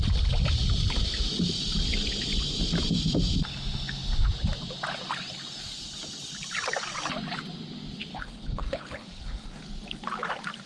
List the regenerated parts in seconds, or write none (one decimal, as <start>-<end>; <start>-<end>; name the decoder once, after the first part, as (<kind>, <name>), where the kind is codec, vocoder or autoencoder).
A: 8.1-9.6 (codec, HILCodec)